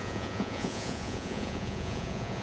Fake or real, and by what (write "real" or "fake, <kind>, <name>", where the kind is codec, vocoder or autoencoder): fake, vocoder, Vocos